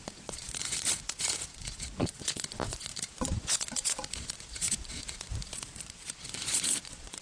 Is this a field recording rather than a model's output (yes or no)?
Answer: no